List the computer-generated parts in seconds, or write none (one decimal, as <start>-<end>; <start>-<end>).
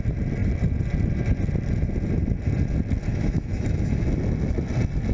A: 3.1-4.0